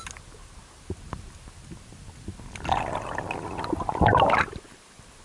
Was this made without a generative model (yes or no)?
yes